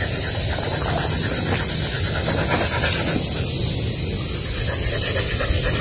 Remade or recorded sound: recorded